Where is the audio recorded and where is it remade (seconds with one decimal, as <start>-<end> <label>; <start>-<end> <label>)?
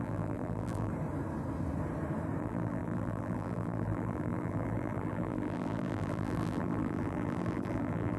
0.0-0.9 remade; 0.9-2.4 recorded; 2.4-8.2 remade